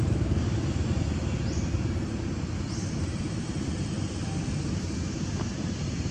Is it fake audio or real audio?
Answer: real